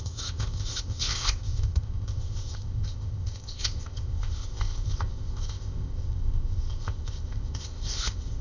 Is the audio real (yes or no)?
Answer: no